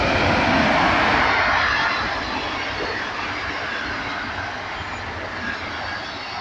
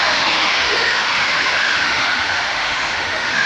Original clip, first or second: first